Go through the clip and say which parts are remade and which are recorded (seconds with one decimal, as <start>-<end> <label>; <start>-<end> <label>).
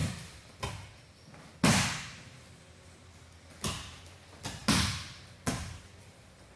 0.0-6.6 recorded